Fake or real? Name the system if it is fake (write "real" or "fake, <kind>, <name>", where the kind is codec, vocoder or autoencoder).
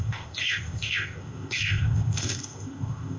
fake, codec, ZipCodec